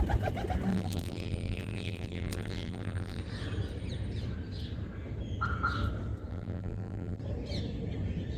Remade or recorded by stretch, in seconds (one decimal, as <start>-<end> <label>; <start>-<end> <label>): 0.0-0.7 recorded; 0.7-3.2 remade; 3.2-6.3 recorded; 6.3-7.2 remade; 7.2-8.4 recorded